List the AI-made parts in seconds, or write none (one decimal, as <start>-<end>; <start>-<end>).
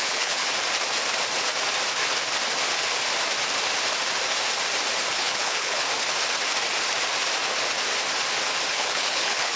0.0-0.4; 5.1-5.8; 8.7-9.6